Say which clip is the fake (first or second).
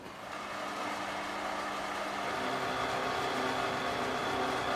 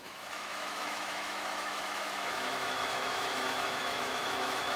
second